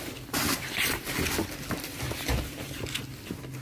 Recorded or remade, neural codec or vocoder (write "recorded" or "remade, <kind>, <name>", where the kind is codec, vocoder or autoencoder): recorded